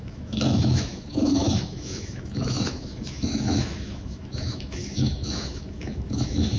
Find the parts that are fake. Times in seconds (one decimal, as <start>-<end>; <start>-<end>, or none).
0.0-6.6